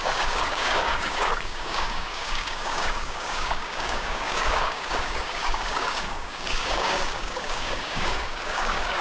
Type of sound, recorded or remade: remade